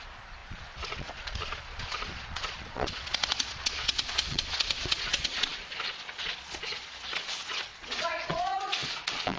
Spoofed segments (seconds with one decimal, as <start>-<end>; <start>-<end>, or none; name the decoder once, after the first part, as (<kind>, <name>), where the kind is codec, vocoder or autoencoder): 0.0-9.4 (vocoder, Vocos)

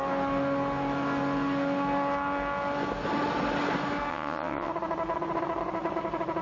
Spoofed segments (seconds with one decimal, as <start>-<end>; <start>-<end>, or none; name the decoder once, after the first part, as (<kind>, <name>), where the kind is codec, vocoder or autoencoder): 4.1-4.7 (vocoder, WaveNeXt)

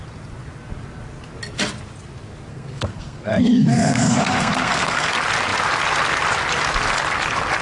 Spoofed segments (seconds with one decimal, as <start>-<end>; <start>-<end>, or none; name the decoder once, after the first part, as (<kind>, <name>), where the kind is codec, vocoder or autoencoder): 2.5-5.1 (codec, SNAC)

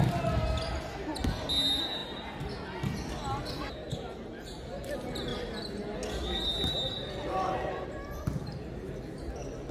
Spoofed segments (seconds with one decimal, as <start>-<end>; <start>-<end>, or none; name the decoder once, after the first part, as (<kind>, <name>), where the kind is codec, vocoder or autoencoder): none

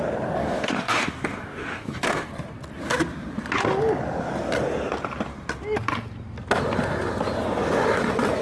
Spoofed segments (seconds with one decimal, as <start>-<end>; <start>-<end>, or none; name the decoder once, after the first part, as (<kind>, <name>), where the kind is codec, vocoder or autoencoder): 0.4-2.3 (codec, DAC)